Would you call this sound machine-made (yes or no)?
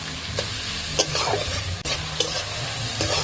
no